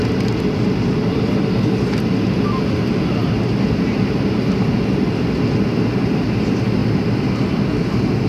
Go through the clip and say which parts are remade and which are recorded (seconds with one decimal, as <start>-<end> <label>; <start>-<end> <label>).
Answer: 0.0-8.3 recorded